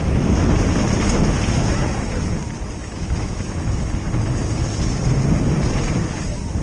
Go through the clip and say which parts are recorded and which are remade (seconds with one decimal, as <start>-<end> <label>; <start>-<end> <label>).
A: 0.0-2.8 recorded; 2.8-3.8 remade; 3.8-6.6 recorded